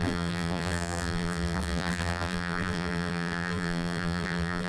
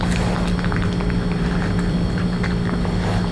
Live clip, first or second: second